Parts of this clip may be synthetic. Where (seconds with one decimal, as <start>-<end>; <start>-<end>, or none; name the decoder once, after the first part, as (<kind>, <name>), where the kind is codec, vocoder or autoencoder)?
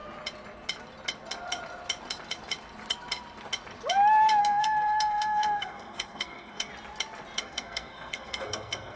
4.4-6.7 (codec, SNAC); 7.4-9.0